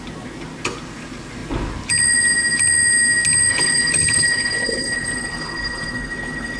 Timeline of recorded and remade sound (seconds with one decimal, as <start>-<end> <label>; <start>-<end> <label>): 0.0-3.5 recorded; 3.5-6.6 remade